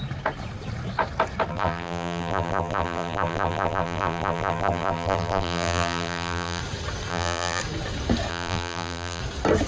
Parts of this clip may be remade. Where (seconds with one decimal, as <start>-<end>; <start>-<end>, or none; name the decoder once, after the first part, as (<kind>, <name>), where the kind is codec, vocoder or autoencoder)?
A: 1.5-6.6 (vocoder, BigVGAN v2); 7.1-7.6; 8.3-9.2